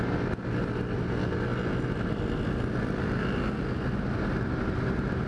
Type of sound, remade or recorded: recorded